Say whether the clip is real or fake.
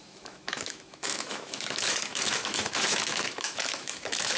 fake